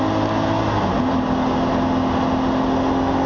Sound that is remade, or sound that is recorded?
recorded